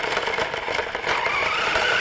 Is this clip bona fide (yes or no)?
yes